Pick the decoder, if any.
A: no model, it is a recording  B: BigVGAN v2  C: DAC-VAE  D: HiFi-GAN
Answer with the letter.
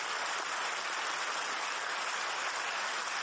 A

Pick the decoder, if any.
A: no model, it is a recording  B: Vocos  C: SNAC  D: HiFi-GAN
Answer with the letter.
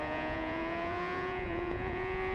B